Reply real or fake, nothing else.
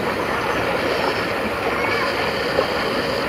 real